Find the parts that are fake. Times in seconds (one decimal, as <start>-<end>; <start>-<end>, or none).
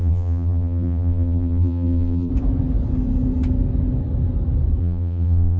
0.0-2.3; 4.8-5.6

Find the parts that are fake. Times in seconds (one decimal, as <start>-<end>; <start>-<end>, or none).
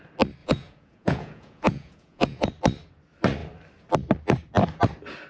0.4-2.5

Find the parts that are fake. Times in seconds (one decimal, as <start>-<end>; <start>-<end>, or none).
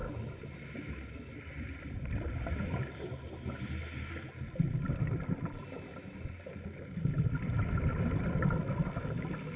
none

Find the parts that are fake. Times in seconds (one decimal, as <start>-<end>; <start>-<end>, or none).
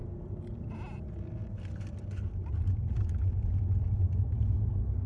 none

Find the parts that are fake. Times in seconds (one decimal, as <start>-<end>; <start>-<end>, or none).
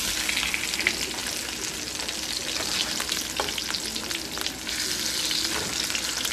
none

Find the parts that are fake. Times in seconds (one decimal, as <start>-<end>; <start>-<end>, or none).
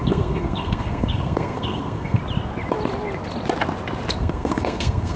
0.0-2.2; 4.2-5.2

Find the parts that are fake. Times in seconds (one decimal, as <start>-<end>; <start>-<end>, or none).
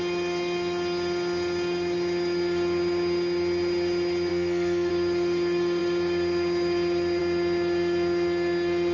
4.3-4.9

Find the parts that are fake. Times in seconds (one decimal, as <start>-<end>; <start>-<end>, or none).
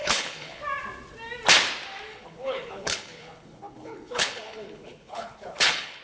0.0-0.6; 2.1-6.0